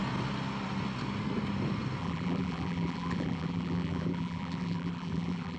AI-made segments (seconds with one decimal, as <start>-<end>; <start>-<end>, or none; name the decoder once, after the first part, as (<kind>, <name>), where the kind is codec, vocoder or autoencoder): 2.0-5.6 (vocoder, BigVGAN v2)